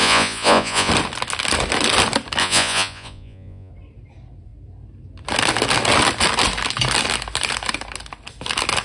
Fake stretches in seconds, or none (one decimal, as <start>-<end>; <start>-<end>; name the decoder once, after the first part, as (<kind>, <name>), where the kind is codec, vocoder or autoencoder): 0.0-0.9 (vocoder, Vocos); 2.4-3.7